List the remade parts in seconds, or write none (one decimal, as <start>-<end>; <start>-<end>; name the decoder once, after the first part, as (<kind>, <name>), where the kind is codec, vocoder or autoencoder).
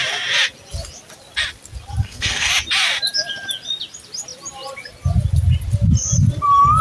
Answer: 2.0-2.5 (codec, SNAC)